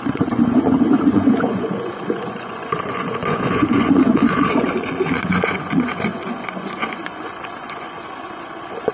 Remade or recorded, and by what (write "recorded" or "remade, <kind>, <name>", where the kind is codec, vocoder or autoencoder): remade, vocoder, Vocos